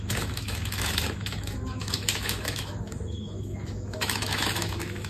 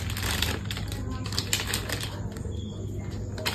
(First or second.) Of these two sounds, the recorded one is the second